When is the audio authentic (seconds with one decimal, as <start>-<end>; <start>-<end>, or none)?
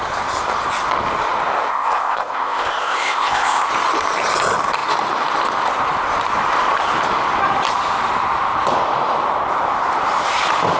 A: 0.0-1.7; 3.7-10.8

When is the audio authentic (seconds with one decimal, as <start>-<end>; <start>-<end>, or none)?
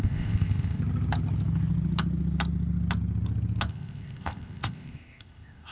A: 0.8-3.7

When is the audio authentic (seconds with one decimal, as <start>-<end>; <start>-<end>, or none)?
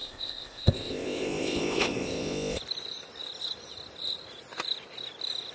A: 2.6-5.5